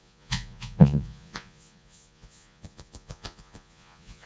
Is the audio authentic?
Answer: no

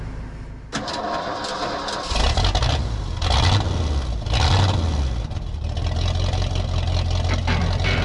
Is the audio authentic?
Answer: yes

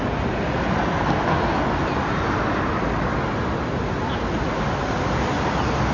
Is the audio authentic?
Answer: yes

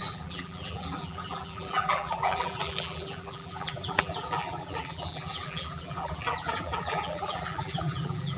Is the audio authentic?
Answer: no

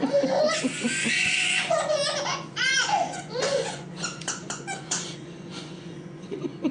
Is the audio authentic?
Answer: no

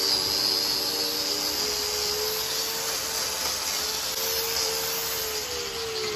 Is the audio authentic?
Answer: yes